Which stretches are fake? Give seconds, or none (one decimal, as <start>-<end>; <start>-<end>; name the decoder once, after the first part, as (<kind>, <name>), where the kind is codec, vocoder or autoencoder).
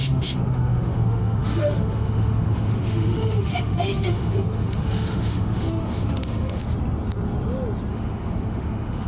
0.0-6.6 (autoencoder, DAC-VAE); 7.9-9.1